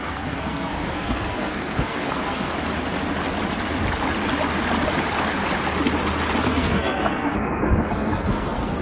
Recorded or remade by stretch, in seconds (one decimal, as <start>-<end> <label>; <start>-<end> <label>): 0.0-2.5 remade; 2.5-6.4 recorded; 6.4-8.8 remade